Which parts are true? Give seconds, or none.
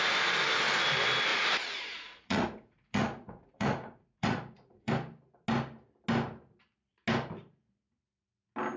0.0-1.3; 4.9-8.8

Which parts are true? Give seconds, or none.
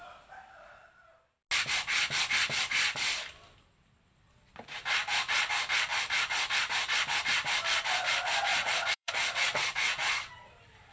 0.0-8.5; 10.1-10.9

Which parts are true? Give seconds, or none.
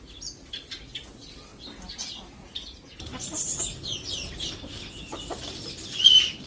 0.0-6.5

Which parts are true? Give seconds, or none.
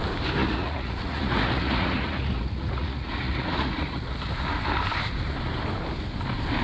0.0-0.4; 4.2-6.6